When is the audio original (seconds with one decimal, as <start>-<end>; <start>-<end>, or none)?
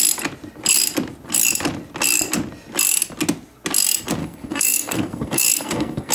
0.0-4.2